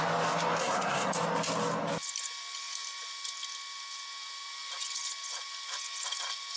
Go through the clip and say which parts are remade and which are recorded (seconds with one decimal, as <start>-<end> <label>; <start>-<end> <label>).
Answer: 0.0-0.6 recorded; 0.6-1.1 remade; 1.1-6.6 recorded